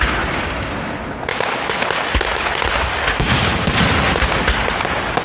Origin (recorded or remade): recorded